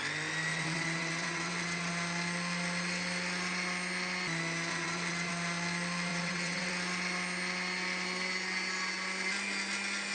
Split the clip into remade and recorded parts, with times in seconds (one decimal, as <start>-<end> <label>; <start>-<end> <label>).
0.0-0.5 recorded; 0.5-1.9 remade; 1.9-4.7 recorded; 4.7-5.3 remade; 5.3-6.1 recorded; 6.1-6.7 remade; 6.7-10.1 recorded